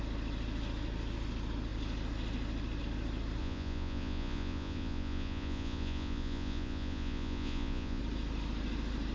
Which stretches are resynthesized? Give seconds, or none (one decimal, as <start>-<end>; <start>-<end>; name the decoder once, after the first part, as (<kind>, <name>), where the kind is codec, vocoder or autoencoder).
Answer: 3.4-8.0 (vocoder, Vocos)